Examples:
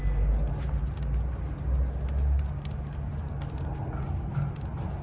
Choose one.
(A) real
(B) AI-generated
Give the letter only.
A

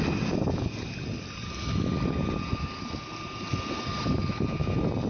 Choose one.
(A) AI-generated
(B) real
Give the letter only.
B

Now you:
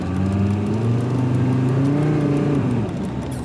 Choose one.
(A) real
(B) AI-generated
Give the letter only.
A